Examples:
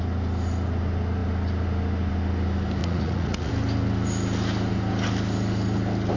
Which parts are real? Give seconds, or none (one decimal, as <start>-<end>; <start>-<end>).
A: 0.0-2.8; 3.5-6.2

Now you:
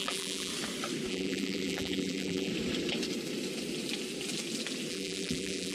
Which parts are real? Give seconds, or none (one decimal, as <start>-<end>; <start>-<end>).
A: 0.5-1.1; 2.5-4.9

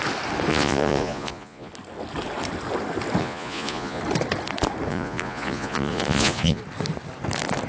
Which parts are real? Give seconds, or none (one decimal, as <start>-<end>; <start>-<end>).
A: 0.0-0.5; 1.7-3.2; 4.0-4.9; 6.6-7.7

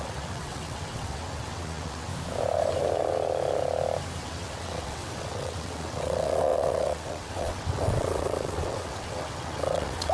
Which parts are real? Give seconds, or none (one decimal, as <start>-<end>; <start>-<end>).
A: 2.1-4.2

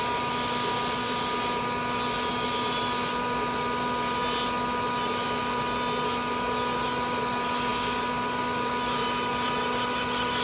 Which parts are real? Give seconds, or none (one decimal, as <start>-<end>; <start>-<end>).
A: 0.0-10.4

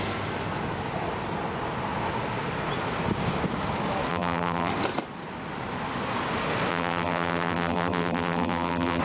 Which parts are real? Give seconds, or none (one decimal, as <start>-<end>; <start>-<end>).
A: 0.0-4.1; 4.7-6.7

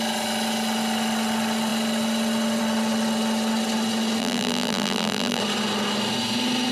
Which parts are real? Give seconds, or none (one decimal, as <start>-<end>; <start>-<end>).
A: 0.0-4.2; 5.4-6.7